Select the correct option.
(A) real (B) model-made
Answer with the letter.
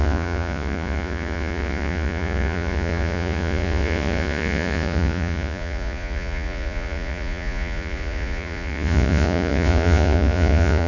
B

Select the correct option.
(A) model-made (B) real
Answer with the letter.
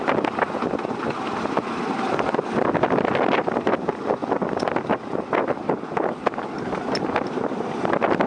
B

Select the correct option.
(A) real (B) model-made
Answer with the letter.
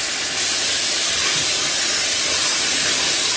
A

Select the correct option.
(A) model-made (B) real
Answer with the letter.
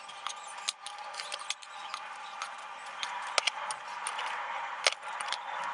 B